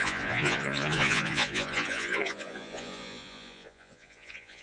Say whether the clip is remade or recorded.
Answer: remade